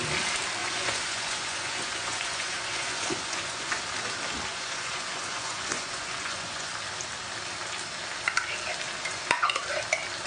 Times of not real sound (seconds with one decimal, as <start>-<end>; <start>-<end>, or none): 0.6-3.8; 4.5-6.7; 9.1-9.6